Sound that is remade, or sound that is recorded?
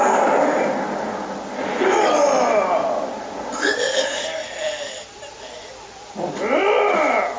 recorded